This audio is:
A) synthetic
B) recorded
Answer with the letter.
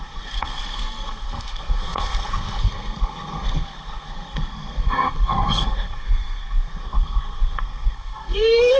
A